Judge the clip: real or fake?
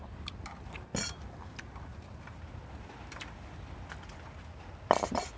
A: real